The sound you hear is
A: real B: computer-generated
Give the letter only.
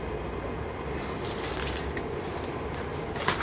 A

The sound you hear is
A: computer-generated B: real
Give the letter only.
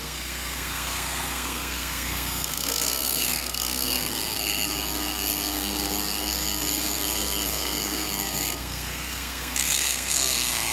A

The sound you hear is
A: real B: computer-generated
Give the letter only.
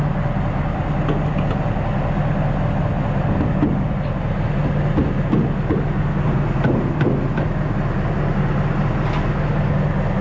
A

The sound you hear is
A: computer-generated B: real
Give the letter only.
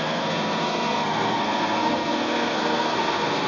A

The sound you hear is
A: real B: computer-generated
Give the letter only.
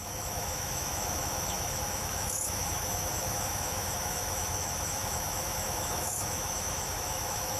B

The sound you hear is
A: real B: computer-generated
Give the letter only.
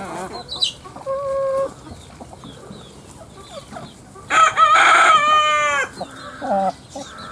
A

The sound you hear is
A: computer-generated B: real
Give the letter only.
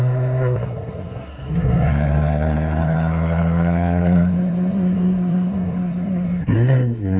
A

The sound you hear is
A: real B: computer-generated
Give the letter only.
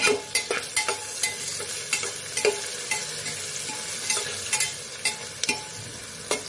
A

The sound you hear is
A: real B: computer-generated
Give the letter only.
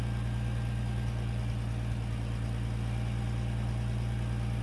A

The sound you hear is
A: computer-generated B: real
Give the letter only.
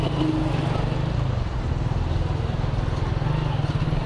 B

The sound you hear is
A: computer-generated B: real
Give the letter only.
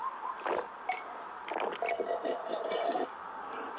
B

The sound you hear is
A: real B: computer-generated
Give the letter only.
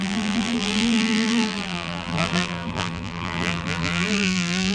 B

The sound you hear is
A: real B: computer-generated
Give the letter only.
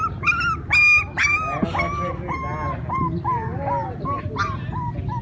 A